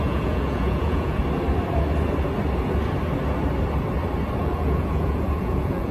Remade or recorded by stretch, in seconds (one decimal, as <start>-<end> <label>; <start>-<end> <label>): 0.0-1.2 remade; 1.2-4.4 recorded; 4.4-5.9 remade